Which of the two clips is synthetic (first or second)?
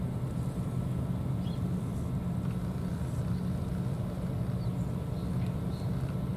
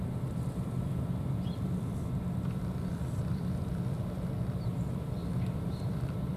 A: second